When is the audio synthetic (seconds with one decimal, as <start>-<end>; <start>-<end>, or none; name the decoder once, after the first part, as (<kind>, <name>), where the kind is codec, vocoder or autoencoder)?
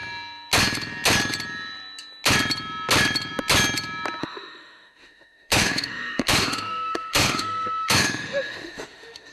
4.2-9.3 (autoencoder, DAC-VAE)